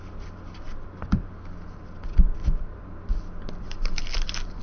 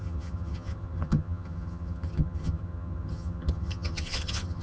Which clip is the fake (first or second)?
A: second